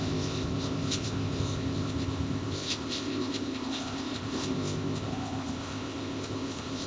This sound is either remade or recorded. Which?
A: remade